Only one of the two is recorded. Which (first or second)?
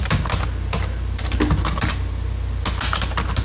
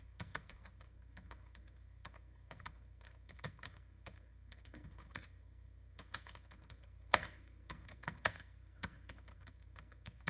first